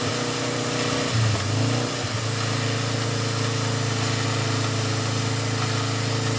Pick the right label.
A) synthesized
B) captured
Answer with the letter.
B